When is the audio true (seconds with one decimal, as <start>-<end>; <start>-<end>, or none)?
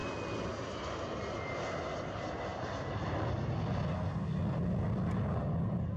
0.0-6.0